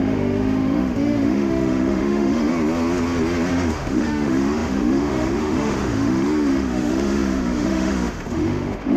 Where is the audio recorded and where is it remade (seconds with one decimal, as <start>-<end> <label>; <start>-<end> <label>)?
0.0-2.5 remade; 2.5-3.5 recorded; 3.5-9.0 remade